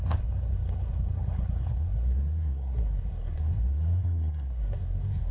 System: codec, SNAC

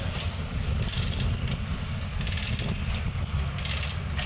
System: none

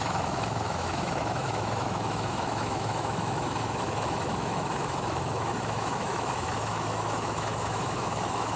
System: autoencoder, DAC-VAE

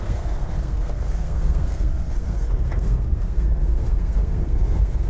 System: codec, SNAC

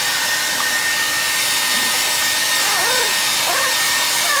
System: none